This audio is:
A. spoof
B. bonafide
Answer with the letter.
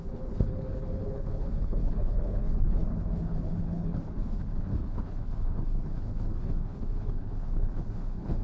A